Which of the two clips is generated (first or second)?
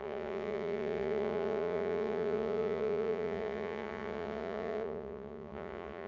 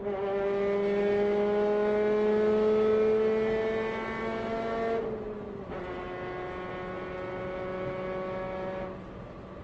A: first